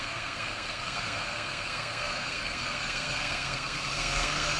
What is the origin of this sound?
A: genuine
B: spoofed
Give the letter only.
B